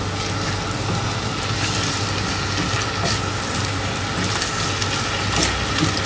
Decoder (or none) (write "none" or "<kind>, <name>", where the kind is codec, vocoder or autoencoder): none